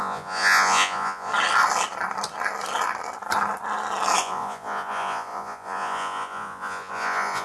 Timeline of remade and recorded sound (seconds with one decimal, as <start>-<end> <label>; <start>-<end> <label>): 0.0-1.3 remade; 1.3-4.2 recorded; 4.2-7.4 remade